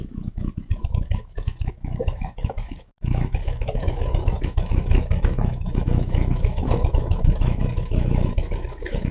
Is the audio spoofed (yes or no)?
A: yes